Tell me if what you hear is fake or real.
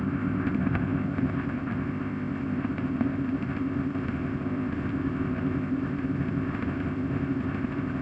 fake